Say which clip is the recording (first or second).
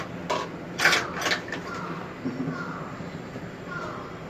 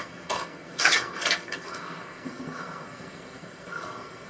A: first